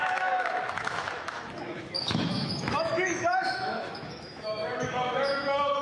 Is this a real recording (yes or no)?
no